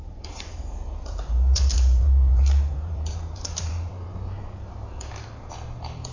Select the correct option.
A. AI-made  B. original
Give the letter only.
A